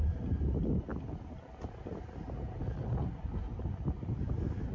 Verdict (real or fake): real